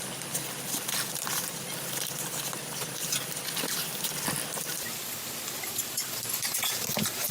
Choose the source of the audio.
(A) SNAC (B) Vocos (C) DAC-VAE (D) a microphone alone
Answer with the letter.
D